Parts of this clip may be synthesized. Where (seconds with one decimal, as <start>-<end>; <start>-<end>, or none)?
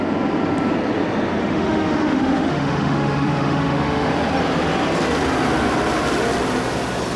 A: 1.4-4.1